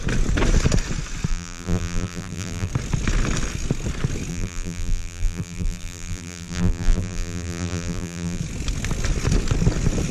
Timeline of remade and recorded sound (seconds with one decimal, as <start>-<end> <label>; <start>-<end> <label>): 0.0-1.3 recorded; 1.3-2.7 remade; 2.7-4.3 recorded; 4.3-8.4 remade; 8.4-10.1 recorded